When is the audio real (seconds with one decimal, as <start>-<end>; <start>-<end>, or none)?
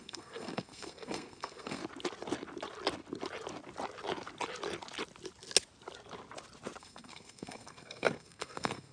1.8-6.8